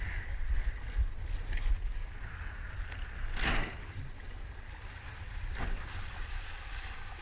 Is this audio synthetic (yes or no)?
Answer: no